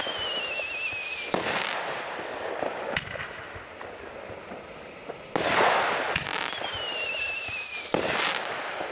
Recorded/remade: recorded